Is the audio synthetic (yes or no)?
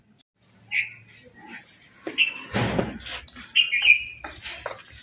no